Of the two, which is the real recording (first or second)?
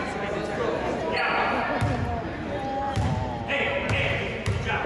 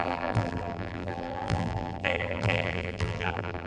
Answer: first